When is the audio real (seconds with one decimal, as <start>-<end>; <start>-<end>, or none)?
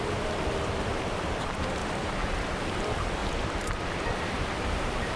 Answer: 1.8-2.5; 3.2-4.4